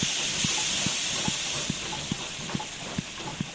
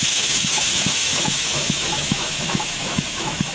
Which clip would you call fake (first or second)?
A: second